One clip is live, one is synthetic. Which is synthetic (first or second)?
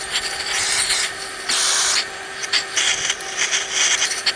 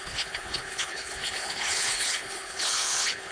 second